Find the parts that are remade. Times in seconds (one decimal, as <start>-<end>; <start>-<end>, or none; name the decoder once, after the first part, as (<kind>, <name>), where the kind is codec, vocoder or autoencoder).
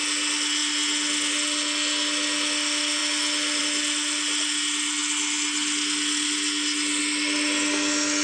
none